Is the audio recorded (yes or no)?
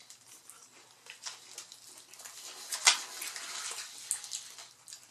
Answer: yes